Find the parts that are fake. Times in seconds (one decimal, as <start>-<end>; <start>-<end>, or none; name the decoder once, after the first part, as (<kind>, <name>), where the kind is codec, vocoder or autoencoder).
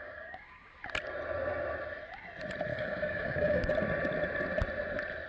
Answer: 0.0-0.8 (codec, DAC); 2.7-3.7